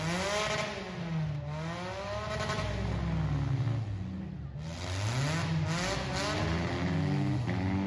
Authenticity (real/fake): real